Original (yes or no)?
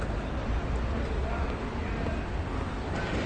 yes